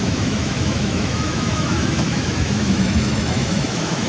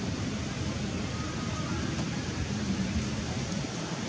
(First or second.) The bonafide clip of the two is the second